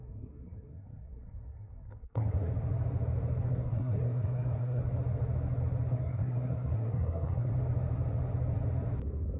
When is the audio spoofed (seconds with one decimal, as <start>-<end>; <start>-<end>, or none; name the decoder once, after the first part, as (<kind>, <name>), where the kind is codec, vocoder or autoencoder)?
0.0-2.5 (codec, SNAC); 3.5-4.8; 5.9-7.5